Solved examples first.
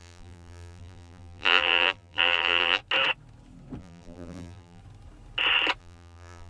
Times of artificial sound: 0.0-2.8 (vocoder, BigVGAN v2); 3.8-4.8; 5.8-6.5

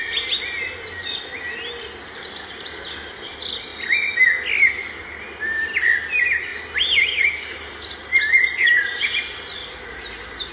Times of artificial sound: 6.5-7.9 (vocoder, BigVGAN v2)

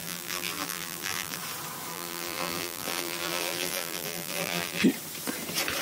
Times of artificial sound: 0.0-1.4 (vocoder, BigVGAN v2); 1.9-4.8

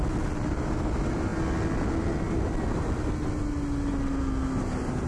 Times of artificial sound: none